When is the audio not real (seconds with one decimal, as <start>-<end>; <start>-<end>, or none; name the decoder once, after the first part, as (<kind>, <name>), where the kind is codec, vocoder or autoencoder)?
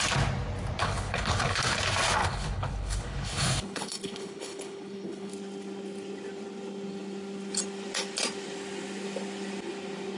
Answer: 0.8-1.8 (codec, HILCodec); 2.2-5.3